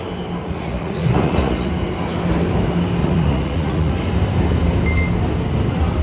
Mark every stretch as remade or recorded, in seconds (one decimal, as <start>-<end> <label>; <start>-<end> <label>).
0.0-0.4 recorded; 0.4-1.7 remade; 1.7-3.0 recorded; 3.0-3.9 remade; 3.9-6.0 recorded